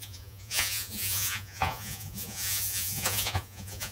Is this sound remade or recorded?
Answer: remade